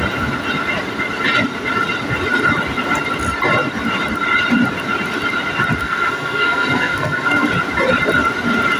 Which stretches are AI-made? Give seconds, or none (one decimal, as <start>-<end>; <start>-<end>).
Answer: 5.8-7.5